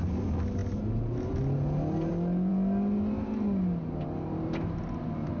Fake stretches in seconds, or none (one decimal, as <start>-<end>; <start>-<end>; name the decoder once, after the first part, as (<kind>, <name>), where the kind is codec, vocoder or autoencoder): none

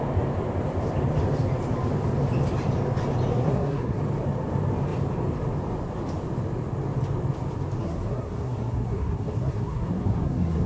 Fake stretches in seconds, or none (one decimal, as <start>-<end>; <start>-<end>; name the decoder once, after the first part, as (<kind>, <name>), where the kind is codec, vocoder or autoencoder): 3.3-4.0 (codec, SNAC); 7.8-10.7

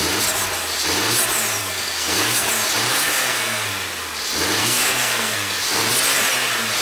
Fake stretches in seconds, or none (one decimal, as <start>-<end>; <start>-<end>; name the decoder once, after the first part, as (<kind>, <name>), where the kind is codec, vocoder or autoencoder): 1.6-2.5 (codec, SNAC); 2.9-3.7; 4.6-5.9

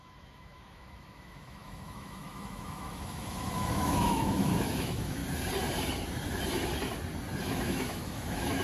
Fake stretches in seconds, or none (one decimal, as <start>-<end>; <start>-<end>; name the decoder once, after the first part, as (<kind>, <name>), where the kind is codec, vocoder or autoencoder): 0.0-5.2 (autoencoder, DAC-VAE); 7.4-8.6